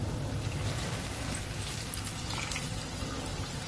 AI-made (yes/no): no